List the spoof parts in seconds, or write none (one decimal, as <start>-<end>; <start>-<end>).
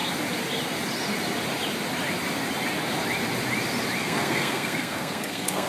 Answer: 4.0-5.7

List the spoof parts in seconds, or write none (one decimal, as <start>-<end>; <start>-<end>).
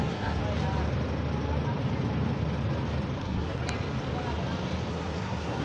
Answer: 0.0-0.4; 3.2-3.6; 4.9-5.6